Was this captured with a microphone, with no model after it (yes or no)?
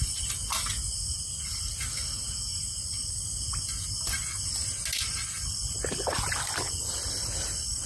yes